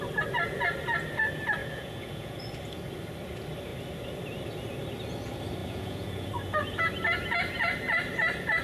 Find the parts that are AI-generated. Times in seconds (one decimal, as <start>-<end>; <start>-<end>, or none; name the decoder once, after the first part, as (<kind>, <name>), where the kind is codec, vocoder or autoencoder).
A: 1.6-2.4 (vocoder, Vocos); 5.6-6.3